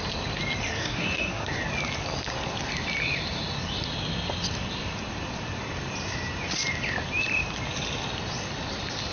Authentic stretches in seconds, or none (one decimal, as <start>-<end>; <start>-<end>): 0.0-0.8; 1.6-9.1